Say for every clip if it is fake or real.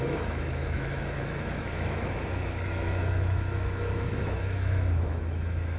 fake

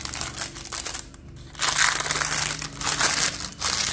real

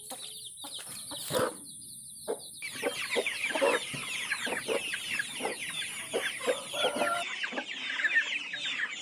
fake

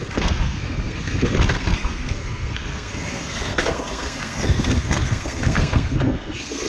fake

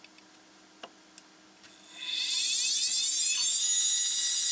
real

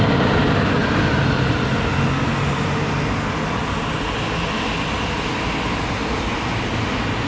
real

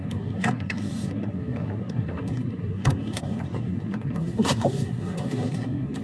fake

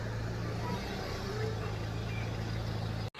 real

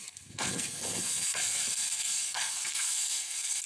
fake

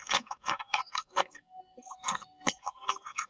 fake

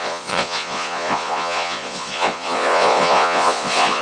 fake